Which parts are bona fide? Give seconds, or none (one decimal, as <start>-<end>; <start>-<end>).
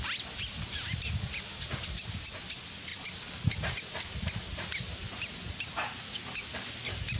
0.0-7.2